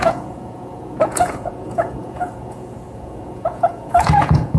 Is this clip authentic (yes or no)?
no